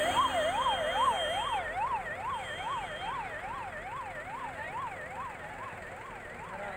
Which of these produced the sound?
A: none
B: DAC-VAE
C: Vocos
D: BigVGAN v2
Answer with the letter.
A